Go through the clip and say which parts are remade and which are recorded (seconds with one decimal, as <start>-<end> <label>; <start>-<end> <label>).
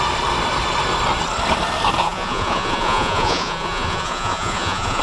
0.0-2.0 recorded; 2.0-5.0 remade